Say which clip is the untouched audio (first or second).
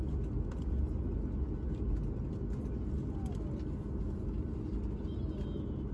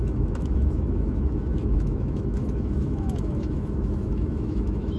first